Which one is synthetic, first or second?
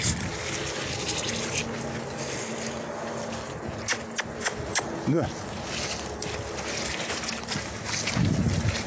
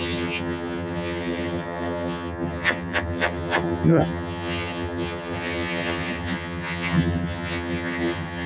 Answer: second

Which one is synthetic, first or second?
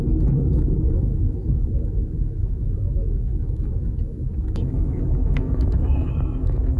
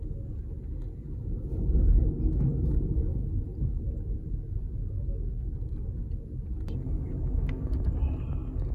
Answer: first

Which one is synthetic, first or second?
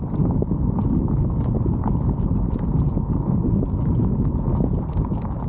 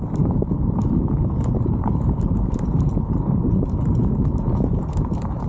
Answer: second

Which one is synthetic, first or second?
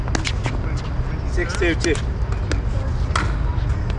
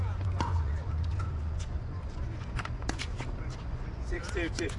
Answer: second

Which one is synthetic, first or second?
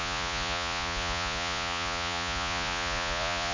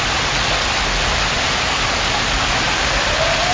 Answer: first